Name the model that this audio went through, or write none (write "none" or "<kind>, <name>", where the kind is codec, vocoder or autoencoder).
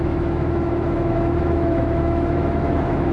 autoencoder, DAC-VAE